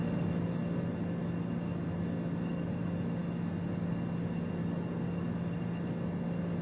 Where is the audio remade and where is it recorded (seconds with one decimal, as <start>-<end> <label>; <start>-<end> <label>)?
0.0-6.6 recorded